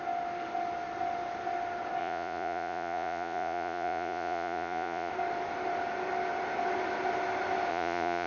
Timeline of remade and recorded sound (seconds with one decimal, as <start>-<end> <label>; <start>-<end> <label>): 0.0-2.0 recorded; 2.0-5.1 remade; 5.1-7.7 recorded; 7.7-8.3 remade